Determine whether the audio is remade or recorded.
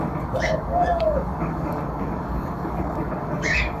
remade